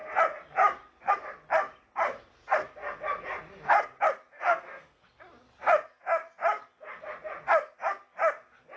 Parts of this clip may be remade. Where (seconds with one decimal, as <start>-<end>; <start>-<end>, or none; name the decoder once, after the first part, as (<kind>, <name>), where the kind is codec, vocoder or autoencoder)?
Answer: 4.3-5.0 (codec, SNAC)